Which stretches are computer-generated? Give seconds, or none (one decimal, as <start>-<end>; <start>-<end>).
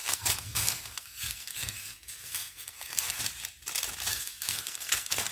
0.0-3.2; 4.1-5.3